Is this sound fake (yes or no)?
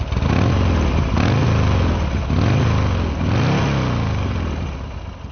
no